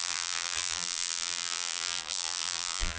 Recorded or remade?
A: remade